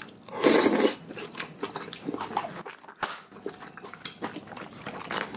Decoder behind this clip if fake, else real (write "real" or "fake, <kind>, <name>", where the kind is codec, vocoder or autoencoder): real